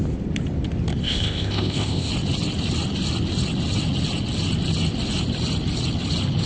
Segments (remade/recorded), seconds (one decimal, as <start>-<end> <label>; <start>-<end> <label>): 0.0-1.0 recorded; 1.0-2.1 remade; 2.1-6.5 recorded